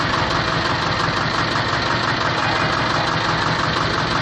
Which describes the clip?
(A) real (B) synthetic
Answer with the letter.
A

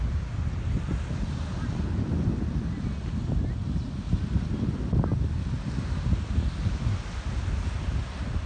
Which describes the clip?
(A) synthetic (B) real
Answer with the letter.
B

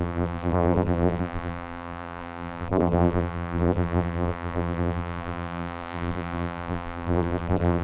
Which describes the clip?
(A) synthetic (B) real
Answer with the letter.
A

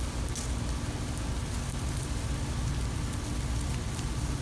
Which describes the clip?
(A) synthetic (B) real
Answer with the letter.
B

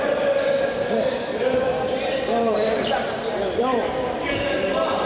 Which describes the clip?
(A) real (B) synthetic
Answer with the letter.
B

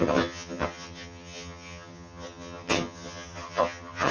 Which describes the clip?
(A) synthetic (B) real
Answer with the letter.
A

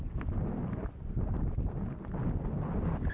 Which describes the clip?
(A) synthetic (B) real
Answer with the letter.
B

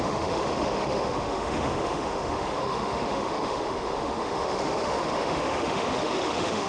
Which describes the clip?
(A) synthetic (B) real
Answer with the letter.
A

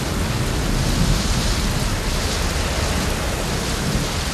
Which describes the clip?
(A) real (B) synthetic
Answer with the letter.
A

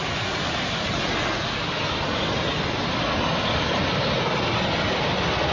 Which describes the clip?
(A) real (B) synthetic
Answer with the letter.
A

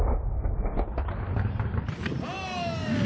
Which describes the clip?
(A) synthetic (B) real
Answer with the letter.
B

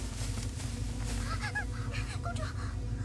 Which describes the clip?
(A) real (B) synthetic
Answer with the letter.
A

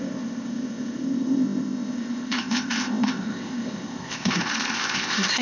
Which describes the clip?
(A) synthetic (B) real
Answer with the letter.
A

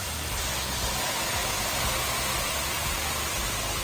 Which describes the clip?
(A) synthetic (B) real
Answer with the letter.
B